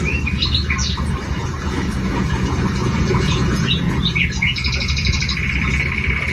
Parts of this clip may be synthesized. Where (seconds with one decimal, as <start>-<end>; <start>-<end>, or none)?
1.4-5.2